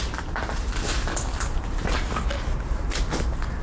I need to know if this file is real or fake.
real